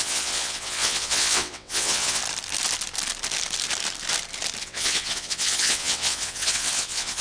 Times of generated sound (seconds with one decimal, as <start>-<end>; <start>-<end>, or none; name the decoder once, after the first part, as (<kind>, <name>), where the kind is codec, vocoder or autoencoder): 0.0-2.2 (vocoder, WaveNeXt); 4.6-7.2